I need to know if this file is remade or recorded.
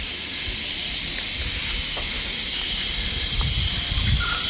recorded